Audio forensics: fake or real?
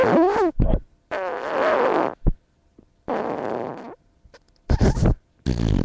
real